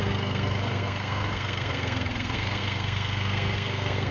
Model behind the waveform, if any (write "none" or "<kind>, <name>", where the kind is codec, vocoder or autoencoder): codec, SNAC